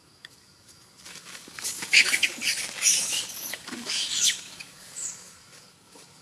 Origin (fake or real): fake